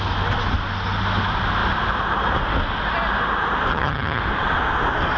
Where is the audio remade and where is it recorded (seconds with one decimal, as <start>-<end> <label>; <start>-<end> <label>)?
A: 0.0-3.7 recorded; 3.7-4.2 remade; 4.2-5.2 recorded